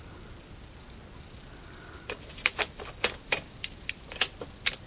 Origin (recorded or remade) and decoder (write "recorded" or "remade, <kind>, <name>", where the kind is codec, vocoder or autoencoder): recorded